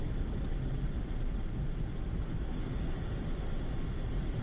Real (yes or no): yes